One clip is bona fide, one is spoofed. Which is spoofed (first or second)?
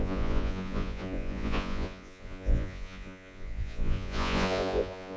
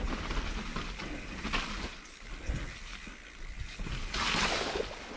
first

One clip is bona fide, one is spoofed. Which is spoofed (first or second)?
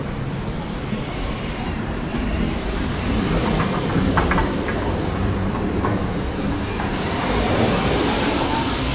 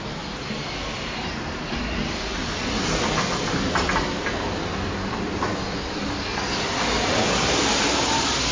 first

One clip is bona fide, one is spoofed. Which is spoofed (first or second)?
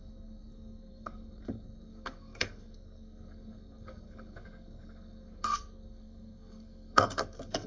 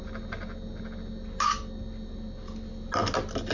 first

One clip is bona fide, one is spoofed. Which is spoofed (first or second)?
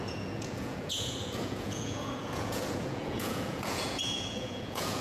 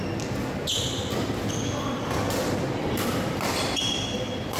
first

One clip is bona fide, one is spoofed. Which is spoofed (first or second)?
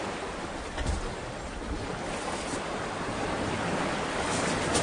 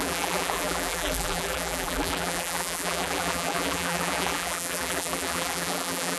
second